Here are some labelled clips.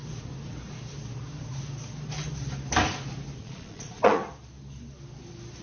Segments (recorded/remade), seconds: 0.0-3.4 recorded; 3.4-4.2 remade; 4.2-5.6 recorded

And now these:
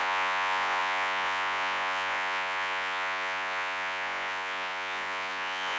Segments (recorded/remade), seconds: 0.0-5.8 remade

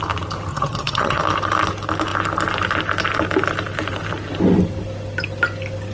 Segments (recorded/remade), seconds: 0.0-0.5 recorded; 0.5-1.2 remade; 1.2-5.9 recorded

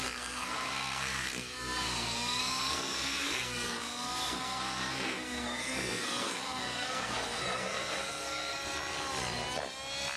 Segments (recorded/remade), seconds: 0.0-8.6 remade; 8.6-10.2 recorded

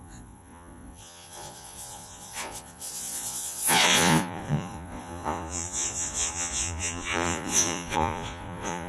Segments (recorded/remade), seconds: 0.0-8.9 remade

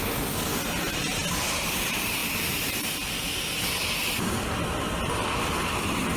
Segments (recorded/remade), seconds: 0.0-6.2 recorded